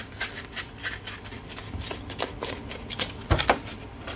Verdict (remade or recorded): recorded